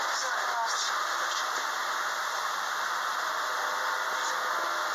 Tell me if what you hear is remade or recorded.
recorded